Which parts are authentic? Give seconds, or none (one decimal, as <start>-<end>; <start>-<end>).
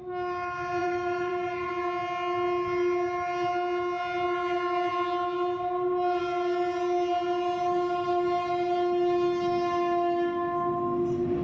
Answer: 0.0-0.8; 1.7-11.4